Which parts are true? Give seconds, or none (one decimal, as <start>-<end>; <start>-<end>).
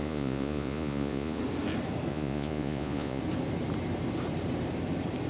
1.4-2.1; 3.2-5.3